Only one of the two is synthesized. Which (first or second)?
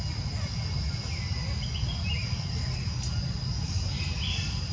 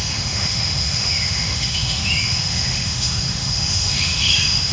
second